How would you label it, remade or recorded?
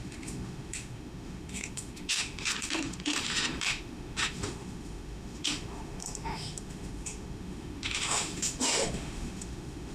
remade